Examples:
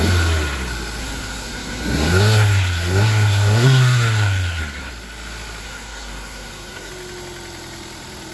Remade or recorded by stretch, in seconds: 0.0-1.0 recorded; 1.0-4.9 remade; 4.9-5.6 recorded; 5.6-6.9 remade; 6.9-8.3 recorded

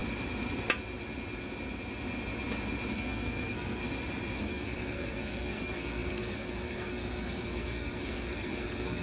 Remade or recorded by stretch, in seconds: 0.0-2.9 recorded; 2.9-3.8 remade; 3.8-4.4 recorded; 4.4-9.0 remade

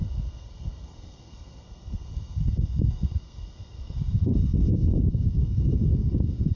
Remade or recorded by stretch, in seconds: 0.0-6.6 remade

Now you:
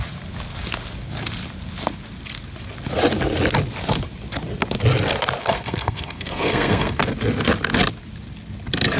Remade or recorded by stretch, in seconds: 0.0-5.4 recorded; 5.4-7.0 remade; 7.0-9.0 recorded

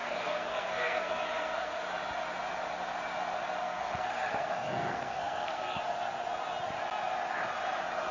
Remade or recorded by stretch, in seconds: 0.0-1.8 remade; 1.8-3.6 recorded; 3.6-5.8 remade; 5.8-8.1 recorded

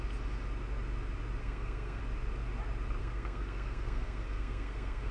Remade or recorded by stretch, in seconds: 0.0-1.4 recorded; 1.4-2.0 remade; 2.0-3.0 recorded; 3.0-5.1 remade